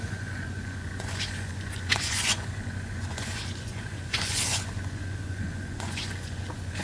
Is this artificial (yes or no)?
yes